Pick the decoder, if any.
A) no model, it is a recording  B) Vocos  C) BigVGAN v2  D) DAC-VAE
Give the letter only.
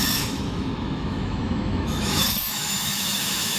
D